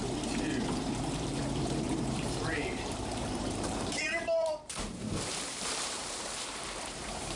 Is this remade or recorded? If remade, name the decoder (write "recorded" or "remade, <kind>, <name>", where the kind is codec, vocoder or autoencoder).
remade, vocoder, BigVGAN v2